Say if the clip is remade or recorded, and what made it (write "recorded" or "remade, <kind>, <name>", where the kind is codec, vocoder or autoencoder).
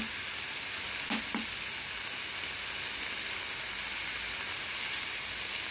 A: recorded